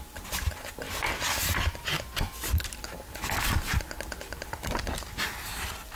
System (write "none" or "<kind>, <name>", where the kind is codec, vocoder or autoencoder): none